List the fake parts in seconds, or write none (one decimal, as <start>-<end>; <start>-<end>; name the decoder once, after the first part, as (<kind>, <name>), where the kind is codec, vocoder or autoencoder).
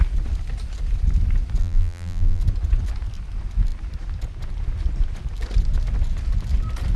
1.6-2.4 (vocoder, BigVGAN v2)